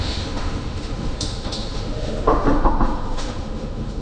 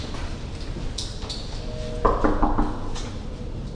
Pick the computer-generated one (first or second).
first